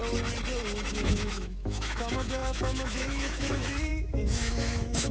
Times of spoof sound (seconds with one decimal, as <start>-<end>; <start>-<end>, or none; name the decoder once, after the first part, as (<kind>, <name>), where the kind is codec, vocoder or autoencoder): 0.9-5.1 (autoencoder, DAC-VAE)